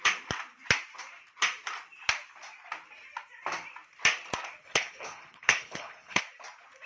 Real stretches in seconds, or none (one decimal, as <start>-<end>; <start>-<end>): 0.0-4.6; 6.2-6.9